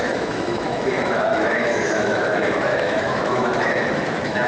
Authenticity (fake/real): fake